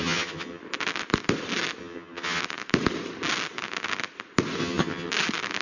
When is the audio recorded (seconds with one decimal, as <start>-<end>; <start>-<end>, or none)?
0.6-1.8; 2.4-4.6; 5.1-5.6